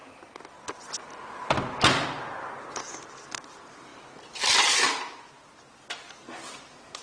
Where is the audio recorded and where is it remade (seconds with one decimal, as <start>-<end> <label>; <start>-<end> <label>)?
0.0-1.7 recorded; 1.7-3.9 remade; 3.9-6.1 recorded; 6.1-7.0 remade